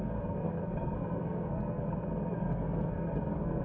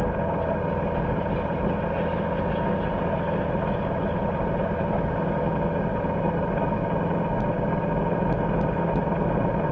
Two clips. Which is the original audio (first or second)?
second